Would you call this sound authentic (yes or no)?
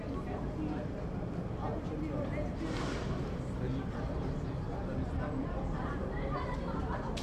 yes